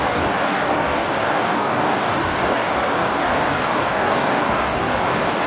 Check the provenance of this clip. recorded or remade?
remade